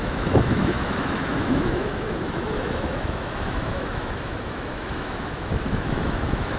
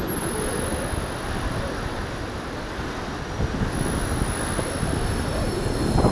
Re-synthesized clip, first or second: first